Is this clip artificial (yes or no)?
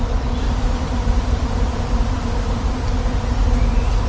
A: no